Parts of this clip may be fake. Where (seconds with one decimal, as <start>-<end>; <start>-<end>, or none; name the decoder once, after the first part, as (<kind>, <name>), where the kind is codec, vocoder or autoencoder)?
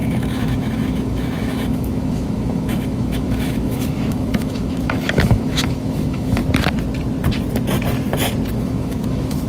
0.0-6.4 (autoencoder, DAC-VAE); 8.5-9.5